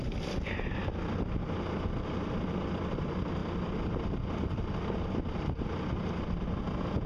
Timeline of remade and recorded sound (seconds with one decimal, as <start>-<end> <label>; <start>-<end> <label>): 0.0-7.1 recorded